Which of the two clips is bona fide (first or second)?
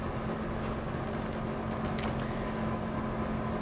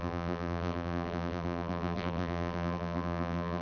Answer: first